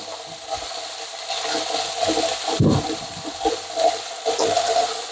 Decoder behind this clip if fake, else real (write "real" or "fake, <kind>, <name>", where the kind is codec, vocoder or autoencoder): real